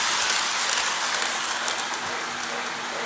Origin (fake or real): real